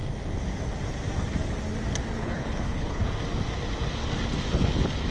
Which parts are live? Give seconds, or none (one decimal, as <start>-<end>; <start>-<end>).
0.0-2.2; 3.0-5.1